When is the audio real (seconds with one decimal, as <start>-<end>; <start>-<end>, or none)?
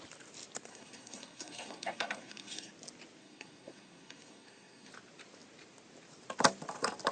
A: 0.0-0.7; 2.7-3.2; 4.9-7.1